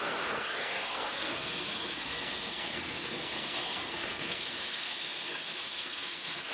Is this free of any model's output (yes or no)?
no